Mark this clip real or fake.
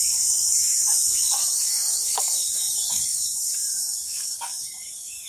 fake